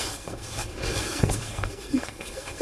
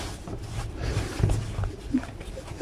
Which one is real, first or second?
second